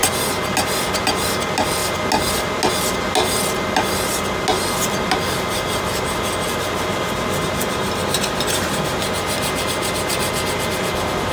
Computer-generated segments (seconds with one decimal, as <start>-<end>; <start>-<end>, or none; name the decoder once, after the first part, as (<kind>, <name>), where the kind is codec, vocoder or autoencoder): none